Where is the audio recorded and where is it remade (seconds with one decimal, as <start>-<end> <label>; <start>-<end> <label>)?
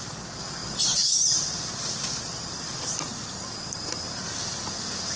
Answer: 0.0-3.1 recorded; 3.1-5.2 remade